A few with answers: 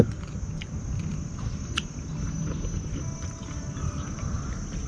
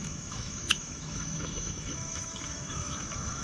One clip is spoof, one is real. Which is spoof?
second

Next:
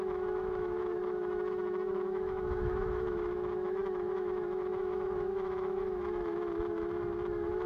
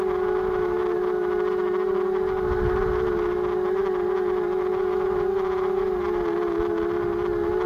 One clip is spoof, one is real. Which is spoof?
first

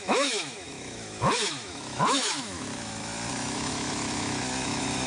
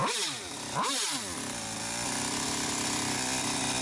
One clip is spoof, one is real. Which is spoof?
first